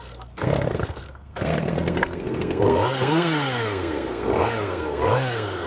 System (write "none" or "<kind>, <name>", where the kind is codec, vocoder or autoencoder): codec, SNAC